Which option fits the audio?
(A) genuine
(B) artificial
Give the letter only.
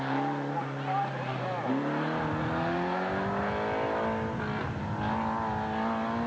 A